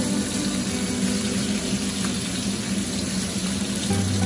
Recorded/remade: recorded